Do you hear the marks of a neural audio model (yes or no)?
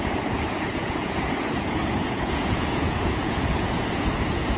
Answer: yes